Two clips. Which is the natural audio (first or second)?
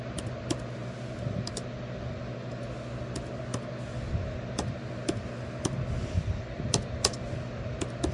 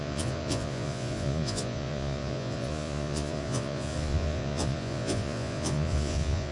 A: first